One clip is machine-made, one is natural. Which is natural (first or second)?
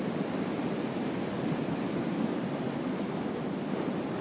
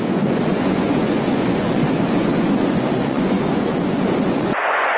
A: first